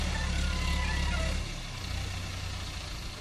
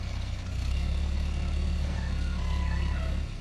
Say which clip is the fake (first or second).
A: second